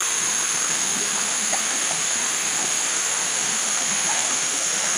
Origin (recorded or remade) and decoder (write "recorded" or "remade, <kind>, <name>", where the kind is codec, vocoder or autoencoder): remade, autoencoder, DAC-VAE